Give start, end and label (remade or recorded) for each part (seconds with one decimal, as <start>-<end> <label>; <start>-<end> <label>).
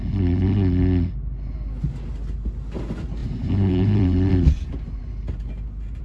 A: 0.0-3.2 recorded; 3.2-4.3 remade; 4.3-6.0 recorded